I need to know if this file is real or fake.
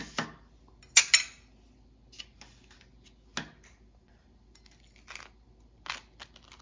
real